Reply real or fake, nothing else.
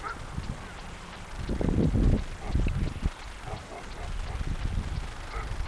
real